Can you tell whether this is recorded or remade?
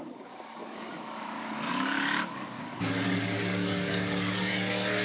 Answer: remade